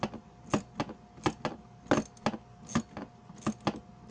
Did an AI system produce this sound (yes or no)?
no